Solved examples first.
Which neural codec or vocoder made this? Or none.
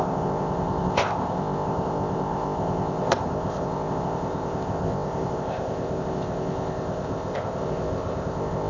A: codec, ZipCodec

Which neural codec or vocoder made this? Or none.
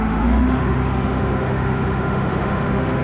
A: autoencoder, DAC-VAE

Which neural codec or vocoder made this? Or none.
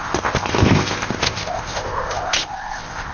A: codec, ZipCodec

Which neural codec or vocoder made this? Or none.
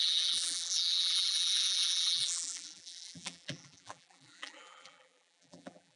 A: vocoder, BigVGAN v2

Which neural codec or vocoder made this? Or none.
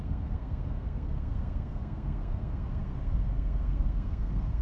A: codec, SNAC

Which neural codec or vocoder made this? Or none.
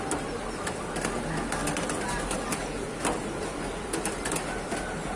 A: none